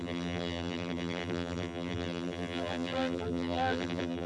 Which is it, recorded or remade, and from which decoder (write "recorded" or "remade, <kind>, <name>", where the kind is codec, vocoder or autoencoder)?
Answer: remade, vocoder, BigVGAN v2